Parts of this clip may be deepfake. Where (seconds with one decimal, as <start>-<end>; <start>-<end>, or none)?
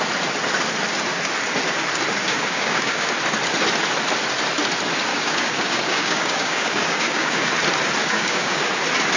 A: 2.2-3.1; 5.1-7.5; 8.0-8.7